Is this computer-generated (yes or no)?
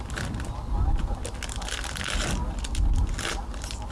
no